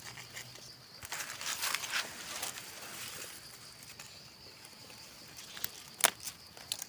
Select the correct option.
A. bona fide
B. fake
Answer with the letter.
A